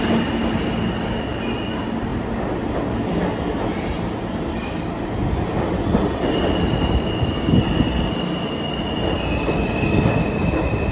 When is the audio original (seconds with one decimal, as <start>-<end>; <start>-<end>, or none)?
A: 0.0-5.9; 7.0-10.9